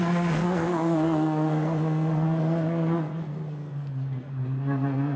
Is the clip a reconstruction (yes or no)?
yes